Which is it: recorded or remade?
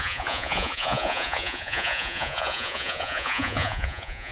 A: remade